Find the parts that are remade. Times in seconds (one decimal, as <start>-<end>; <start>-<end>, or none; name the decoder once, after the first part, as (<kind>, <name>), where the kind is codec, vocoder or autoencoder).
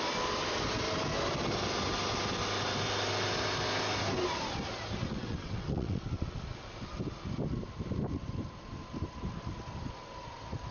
5.0-6.4 (vocoder, WaveNeXt)